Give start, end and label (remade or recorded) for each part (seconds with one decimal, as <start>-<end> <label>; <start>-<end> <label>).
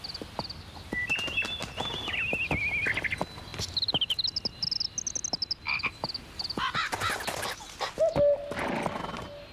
0.0-9.5 recorded